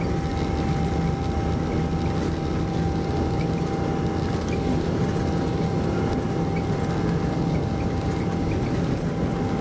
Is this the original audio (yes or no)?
yes